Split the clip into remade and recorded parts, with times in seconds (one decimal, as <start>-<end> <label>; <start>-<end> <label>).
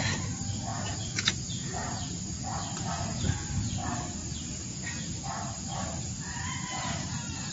0.0-0.7 recorded; 0.7-2.0 remade; 2.0-7.5 recorded